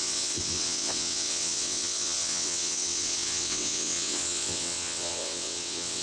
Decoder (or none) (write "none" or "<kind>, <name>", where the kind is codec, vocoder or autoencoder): vocoder, WaveNeXt